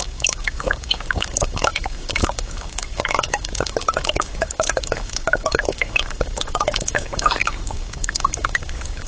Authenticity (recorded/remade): remade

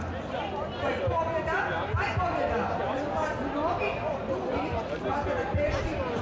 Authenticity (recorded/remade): recorded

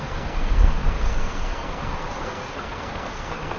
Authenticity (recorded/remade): remade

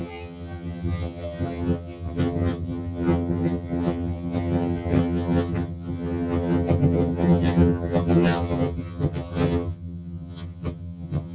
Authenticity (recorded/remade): remade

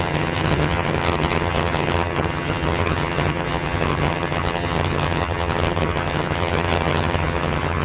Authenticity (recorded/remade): remade